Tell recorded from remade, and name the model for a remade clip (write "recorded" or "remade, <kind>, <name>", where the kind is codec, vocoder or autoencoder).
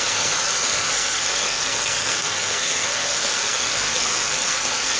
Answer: remade, codec, SNAC